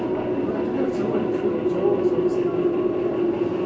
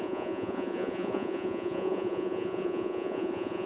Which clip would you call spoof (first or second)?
second